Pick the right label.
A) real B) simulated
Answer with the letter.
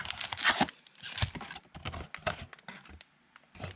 A